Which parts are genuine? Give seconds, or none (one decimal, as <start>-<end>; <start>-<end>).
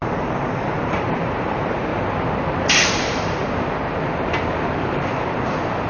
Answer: 1.9-2.8; 3.4-4.8